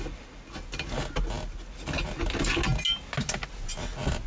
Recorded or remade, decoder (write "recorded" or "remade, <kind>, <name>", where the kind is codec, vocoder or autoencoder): recorded